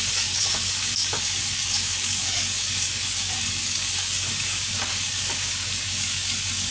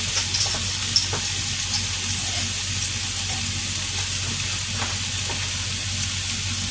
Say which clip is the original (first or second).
second